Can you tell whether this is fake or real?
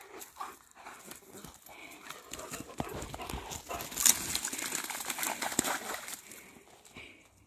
real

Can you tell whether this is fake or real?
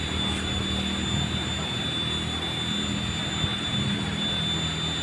real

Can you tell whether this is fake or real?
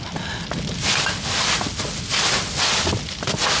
real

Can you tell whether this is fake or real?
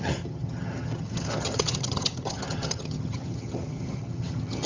fake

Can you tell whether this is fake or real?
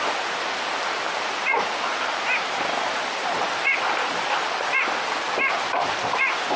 real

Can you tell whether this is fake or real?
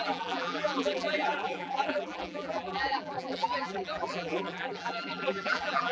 fake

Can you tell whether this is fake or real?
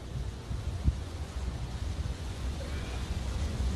fake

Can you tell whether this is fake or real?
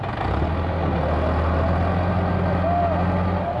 real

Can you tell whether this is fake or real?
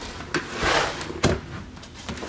real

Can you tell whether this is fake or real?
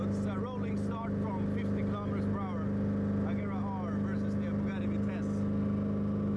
real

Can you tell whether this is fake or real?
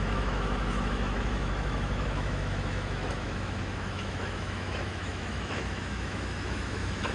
fake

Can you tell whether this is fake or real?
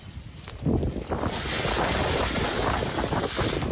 real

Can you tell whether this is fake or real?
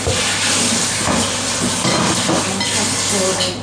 real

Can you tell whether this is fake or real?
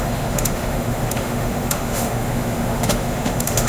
fake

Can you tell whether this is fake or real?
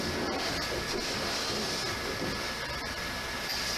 real